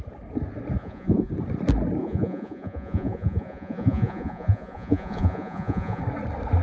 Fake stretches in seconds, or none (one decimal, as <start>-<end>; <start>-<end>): 0.8-1.3; 2.0-6.0

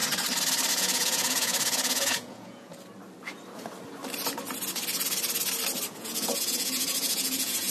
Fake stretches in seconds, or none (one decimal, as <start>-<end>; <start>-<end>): 0.7-2.7; 5.9-7.7